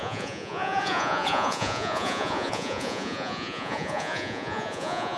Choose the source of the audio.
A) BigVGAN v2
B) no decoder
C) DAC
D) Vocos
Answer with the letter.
D